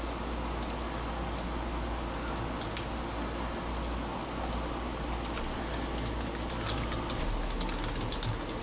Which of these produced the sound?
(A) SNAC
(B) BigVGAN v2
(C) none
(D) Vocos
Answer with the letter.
C